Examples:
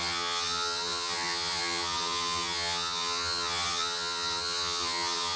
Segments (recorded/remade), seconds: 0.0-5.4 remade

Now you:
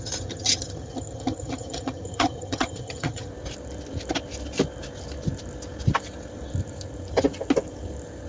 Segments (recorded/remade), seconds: 0.0-3.3 remade; 3.3-8.3 recorded

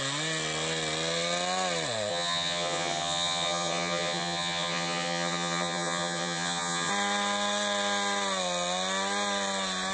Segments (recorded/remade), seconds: 0.0-2.1 recorded; 2.1-6.9 remade; 6.9-9.9 recorded

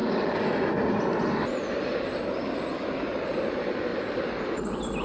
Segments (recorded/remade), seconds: 0.0-5.0 recorded

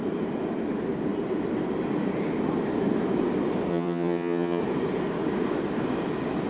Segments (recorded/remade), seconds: 0.0-3.7 recorded; 3.7-4.6 remade; 4.6-6.5 recorded

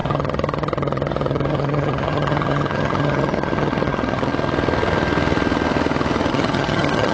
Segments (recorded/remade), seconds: 0.0-4.3 remade; 4.3-6.3 recorded; 6.3-7.1 remade

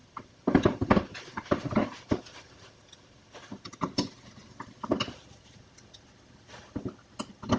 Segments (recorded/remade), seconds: 0.0-7.6 recorded

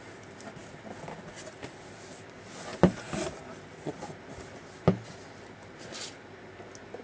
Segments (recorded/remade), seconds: 0.0-7.0 recorded